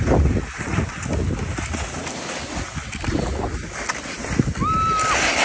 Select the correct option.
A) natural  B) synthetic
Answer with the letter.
A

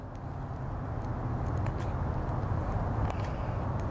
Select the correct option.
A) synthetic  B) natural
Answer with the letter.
B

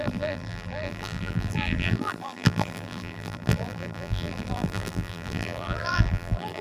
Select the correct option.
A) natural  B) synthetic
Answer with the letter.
B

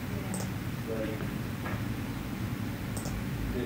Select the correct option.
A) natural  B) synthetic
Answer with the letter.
A